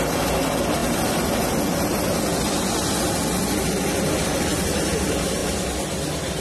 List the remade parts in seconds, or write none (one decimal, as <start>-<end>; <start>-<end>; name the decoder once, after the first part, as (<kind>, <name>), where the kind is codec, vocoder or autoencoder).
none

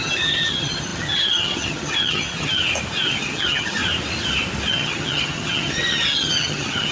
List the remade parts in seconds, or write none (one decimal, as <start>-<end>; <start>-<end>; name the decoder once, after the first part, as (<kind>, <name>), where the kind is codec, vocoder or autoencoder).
0.0-2.6 (vocoder, HiFi-GAN); 3.1-3.8; 4.7-6.9

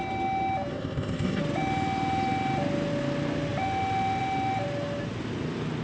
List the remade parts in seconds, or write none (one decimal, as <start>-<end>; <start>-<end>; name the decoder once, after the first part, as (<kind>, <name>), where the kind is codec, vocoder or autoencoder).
0.7-1.4 (codec, ZipCodec)